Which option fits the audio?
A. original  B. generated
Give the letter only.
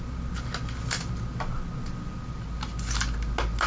A